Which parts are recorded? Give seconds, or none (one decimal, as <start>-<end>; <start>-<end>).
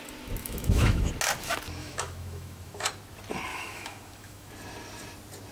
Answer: 0.0-0.4; 1.1-1.8; 2.9-3.5; 4.5-5.5